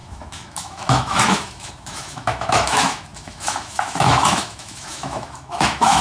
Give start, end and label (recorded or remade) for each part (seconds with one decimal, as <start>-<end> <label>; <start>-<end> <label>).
0.0-6.0 remade